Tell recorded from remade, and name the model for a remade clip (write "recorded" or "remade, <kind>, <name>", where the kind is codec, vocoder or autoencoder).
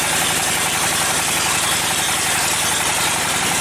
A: remade, vocoder, BigVGAN v2